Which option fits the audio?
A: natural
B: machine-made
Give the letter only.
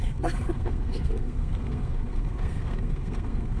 B